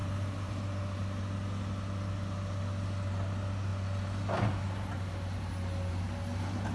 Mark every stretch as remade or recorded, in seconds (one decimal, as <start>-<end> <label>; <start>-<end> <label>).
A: 0.0-1.2 remade; 1.2-6.7 recorded